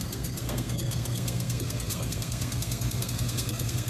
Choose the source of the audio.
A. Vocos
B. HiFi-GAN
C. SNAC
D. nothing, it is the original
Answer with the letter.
C